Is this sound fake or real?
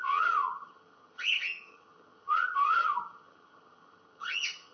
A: fake